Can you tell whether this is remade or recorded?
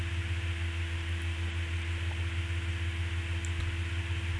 recorded